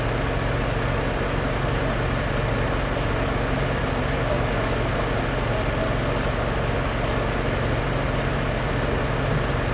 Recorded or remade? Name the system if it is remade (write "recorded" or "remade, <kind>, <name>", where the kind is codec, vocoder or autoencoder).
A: recorded